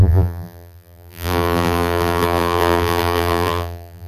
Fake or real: fake